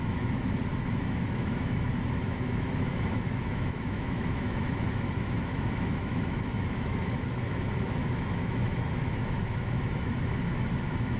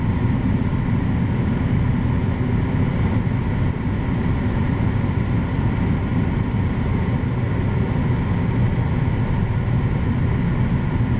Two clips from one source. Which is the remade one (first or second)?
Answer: first